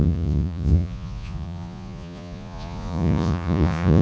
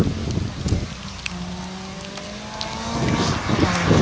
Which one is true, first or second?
second